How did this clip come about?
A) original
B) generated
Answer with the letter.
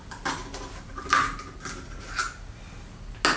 A